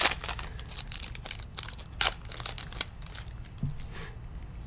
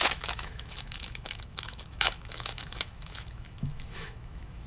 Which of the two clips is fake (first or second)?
second